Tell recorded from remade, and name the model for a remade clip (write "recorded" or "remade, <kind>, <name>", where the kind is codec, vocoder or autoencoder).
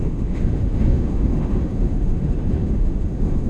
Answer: remade, autoencoder, DAC-VAE